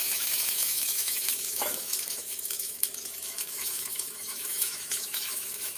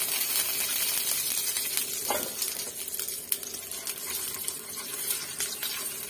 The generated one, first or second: first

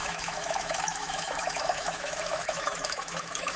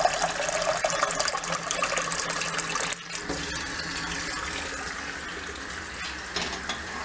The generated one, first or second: first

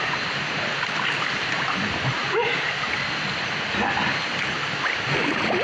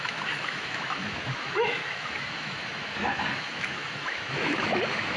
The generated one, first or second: second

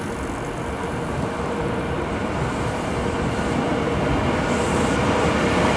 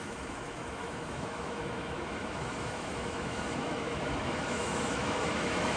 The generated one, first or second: second